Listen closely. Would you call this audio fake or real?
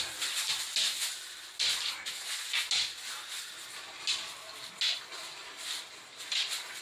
real